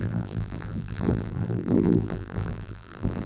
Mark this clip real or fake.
fake